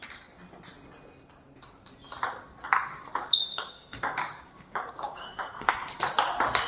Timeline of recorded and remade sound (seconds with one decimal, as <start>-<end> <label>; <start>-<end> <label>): 0.0-3.5 recorded; 3.5-5.7 remade; 5.7-6.7 recorded